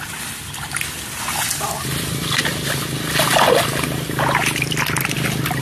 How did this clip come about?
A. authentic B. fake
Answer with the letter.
A